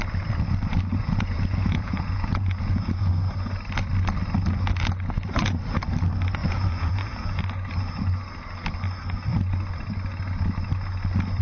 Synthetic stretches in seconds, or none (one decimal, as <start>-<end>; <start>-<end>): 0.9-3.1; 6.4-7.4